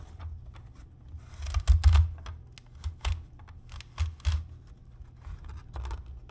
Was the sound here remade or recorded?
recorded